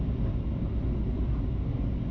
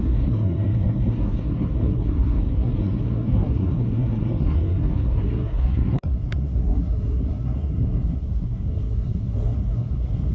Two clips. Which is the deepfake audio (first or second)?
second